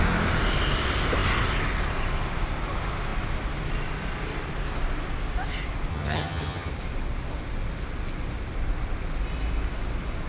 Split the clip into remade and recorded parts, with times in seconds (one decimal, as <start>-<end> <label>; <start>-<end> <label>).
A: 0.0-5.9 recorded; 5.9-6.7 remade; 6.7-10.3 recorded